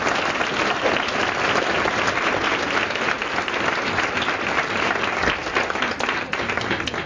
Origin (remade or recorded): remade